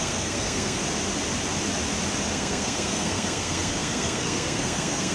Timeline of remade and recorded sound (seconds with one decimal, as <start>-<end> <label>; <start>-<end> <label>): 0.0-0.8 remade; 0.8-2.3 recorded; 2.3-5.1 remade